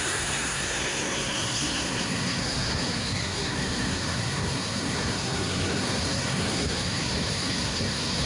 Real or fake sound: fake